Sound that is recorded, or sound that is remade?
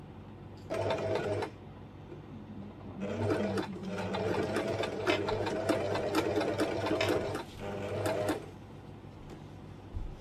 recorded